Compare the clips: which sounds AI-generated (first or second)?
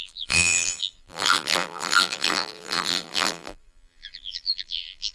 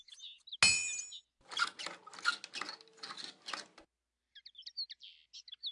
first